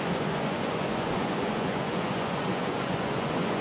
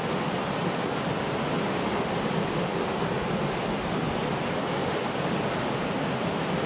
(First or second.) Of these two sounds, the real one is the second